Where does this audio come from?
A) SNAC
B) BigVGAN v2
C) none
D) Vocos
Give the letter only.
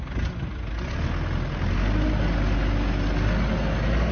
C